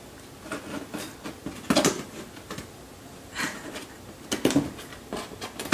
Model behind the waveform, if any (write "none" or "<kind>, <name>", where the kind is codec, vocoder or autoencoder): none